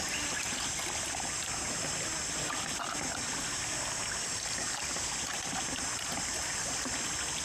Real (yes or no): yes